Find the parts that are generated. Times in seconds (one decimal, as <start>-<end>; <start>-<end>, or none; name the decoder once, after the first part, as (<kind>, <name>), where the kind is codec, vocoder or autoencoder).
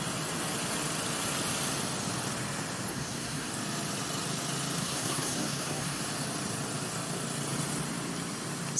2.9-3.5 (codec, SNAC); 4.8-6.0